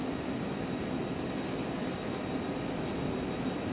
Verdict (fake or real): real